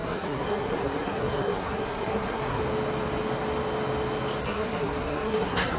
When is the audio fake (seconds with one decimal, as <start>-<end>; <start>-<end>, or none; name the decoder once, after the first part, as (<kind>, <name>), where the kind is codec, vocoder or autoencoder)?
0.0-2.6 (codec, SNAC); 4.4-5.8